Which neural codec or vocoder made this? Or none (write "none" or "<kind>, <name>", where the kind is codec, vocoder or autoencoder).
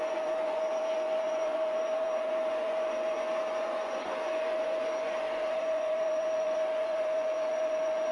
vocoder, Vocos